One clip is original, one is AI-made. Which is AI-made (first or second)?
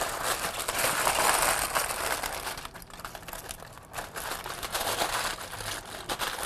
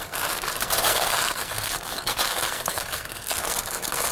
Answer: second